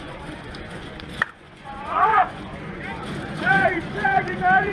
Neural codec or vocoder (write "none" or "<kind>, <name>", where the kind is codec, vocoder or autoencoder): vocoder, Vocos